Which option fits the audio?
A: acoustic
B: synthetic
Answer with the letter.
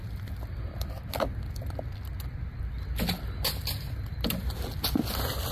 A